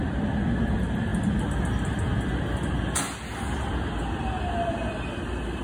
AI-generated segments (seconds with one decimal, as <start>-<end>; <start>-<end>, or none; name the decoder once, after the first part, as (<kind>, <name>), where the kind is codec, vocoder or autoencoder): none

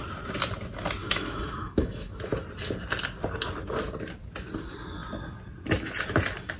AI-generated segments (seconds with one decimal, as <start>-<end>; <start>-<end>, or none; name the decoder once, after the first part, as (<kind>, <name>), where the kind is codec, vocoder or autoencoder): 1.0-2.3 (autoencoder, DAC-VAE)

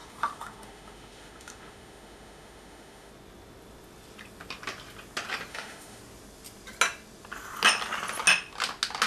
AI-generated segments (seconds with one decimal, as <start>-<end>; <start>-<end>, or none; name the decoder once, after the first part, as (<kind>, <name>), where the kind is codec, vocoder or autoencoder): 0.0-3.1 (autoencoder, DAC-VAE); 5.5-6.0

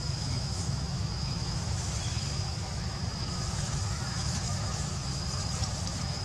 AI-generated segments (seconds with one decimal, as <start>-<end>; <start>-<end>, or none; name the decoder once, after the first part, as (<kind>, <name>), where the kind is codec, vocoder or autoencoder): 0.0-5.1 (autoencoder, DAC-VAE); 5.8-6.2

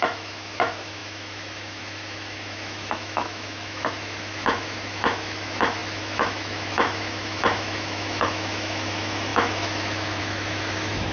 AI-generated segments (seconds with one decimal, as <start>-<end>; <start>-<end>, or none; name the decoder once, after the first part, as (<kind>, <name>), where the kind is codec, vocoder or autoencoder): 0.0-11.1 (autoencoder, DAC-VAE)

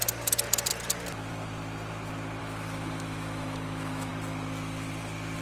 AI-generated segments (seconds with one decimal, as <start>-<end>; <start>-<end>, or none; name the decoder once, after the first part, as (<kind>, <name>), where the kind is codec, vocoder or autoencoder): 2.4-4.1 (autoencoder, DAC-VAE)

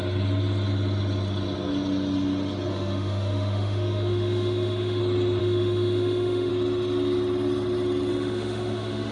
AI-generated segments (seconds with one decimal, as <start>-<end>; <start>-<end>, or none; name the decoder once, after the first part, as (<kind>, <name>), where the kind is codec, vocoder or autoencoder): 2.7-5.0 (autoencoder, DAC-VAE); 5.4-6.5; 8.1-9.1